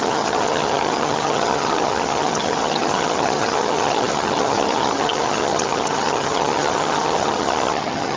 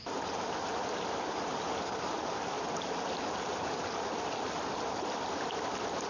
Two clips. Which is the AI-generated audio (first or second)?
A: first